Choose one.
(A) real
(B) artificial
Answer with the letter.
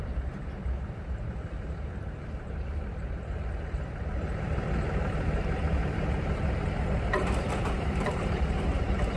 B